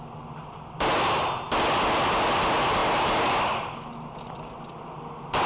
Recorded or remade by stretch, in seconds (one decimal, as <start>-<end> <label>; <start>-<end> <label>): 0.0-5.5 recorded